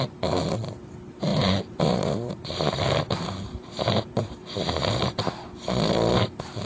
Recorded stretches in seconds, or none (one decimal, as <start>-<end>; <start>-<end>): 0.0-1.3; 5.3-6.7